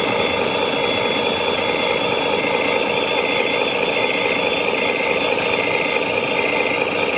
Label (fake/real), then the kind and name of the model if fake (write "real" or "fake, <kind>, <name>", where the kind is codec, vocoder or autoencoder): real